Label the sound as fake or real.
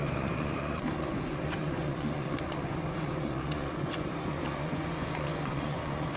fake